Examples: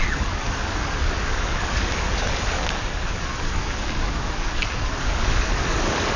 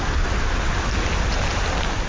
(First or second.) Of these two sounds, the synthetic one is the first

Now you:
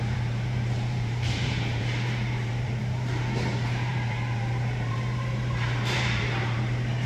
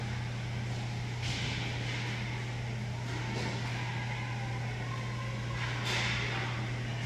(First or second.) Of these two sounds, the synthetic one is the first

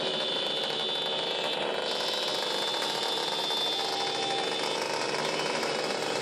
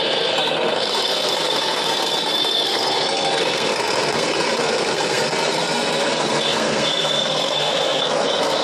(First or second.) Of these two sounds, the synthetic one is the second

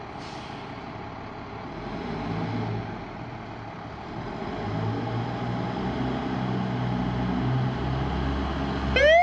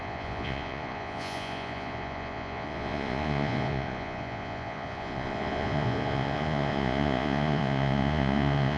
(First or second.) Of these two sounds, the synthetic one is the second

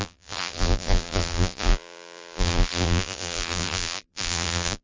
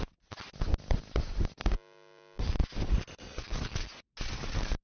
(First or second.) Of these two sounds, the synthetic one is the first